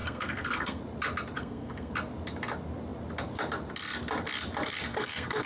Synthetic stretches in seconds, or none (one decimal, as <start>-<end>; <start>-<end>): 0.0-0.8; 1.4-1.9; 4.9-5.5